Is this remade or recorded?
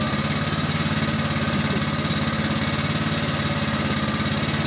recorded